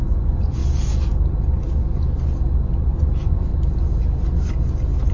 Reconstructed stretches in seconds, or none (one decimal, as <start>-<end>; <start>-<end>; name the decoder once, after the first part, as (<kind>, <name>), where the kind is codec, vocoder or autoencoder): 0.0-0.6 (vocoder, Vocos); 2.9-3.5

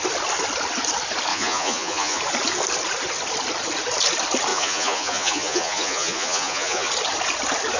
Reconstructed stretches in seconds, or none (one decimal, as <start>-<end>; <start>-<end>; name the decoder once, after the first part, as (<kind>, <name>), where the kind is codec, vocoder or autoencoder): 1.3-2.2 (vocoder, Vocos); 4.5-6.9

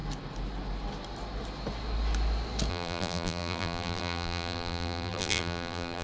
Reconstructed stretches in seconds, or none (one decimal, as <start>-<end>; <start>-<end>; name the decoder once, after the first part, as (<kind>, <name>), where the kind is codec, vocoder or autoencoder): 2.7-6.0 (vocoder, BigVGAN v2)

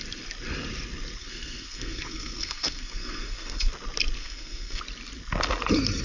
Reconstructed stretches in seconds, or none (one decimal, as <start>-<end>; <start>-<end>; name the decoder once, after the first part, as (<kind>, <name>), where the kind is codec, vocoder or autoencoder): 1.2-3.7 (codec, SNAC); 4.2-4.8